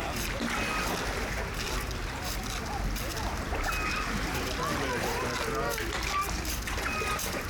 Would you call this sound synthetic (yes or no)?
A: no